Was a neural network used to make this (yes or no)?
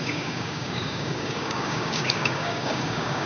yes